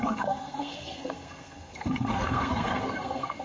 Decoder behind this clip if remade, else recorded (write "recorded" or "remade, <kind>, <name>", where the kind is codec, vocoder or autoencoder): remade, codec, SNAC